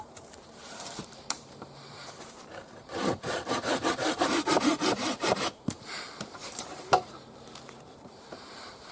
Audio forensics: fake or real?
fake